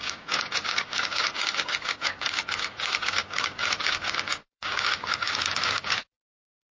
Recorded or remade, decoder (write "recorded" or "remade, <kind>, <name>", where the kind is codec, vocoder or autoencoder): remade, codec, DAC